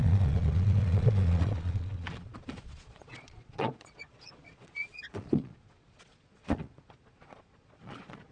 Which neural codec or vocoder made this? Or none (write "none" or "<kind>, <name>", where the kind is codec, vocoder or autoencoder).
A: vocoder, Vocos